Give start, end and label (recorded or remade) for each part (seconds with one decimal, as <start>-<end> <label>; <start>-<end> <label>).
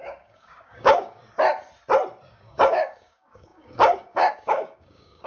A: 0.0-1.2 remade; 1.2-2.3 recorded; 2.3-5.3 remade